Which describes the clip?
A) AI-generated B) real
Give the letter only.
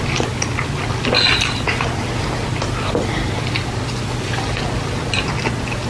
B